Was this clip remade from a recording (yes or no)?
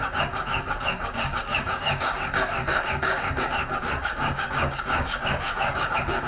yes